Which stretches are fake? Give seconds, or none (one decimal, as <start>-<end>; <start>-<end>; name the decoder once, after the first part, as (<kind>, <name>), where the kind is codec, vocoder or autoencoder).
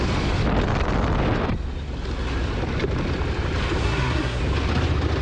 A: 3.8-4.4 (codec, SNAC)